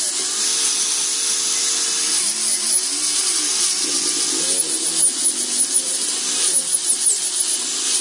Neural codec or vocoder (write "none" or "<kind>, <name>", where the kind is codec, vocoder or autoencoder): none